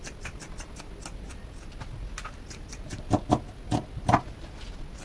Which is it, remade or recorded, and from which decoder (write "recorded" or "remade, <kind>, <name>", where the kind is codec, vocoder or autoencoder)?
recorded